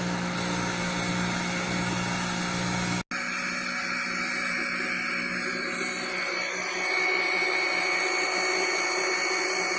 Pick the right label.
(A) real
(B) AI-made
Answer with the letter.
A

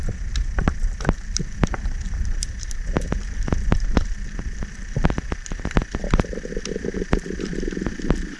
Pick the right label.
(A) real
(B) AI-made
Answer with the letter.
B